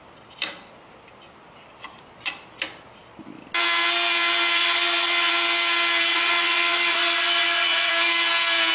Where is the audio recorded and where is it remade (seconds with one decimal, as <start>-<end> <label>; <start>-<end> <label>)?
0.0-4.6 recorded; 4.6-5.3 remade; 5.3-6.1 recorded; 6.1-7.9 remade; 7.9-8.7 recorded